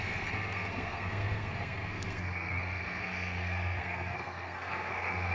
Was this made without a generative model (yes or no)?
no